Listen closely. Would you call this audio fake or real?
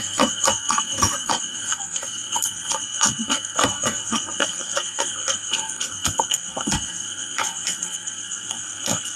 fake